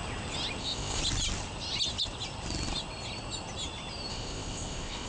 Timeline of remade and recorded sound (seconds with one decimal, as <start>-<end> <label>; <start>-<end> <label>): 0.0-0.6 recorded; 0.6-1.0 remade; 1.0-4.1 recorded; 4.1-5.1 remade